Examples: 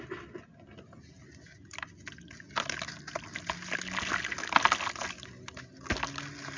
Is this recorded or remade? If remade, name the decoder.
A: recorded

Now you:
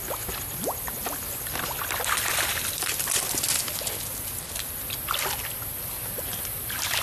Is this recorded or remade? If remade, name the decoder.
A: recorded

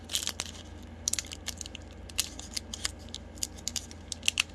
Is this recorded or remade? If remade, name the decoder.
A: recorded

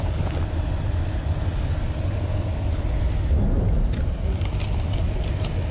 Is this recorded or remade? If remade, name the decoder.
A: recorded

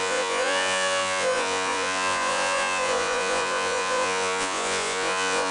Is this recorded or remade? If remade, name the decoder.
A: remade, vocoder, Vocos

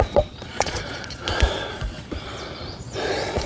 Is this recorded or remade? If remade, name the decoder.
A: remade, vocoder, Vocos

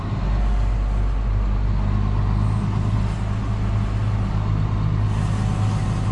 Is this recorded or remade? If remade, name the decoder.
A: recorded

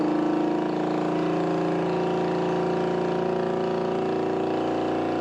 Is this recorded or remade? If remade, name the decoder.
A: recorded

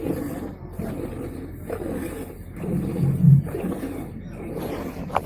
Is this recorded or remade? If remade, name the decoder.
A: recorded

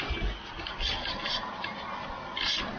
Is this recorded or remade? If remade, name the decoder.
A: recorded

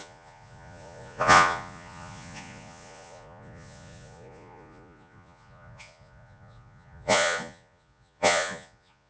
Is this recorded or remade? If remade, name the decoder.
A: remade, vocoder, Vocos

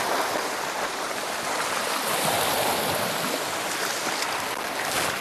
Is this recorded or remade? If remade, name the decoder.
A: recorded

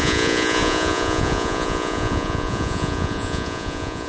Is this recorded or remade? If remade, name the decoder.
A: remade, vocoder, Vocos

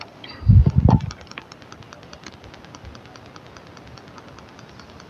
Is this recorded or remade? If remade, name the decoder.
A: recorded